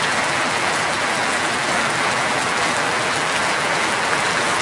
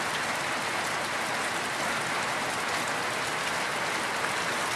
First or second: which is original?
second